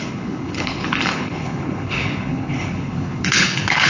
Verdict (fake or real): fake